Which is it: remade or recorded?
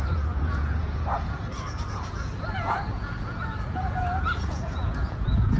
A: remade